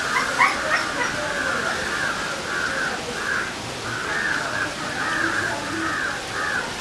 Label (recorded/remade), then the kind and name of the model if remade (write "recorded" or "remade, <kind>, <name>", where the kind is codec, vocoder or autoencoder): recorded